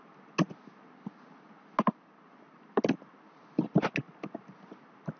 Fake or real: real